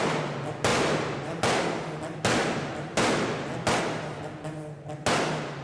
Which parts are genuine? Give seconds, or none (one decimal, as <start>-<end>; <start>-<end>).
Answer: 0.0-5.6